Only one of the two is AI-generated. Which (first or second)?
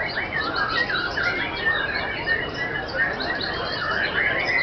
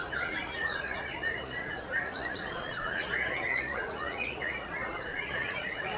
second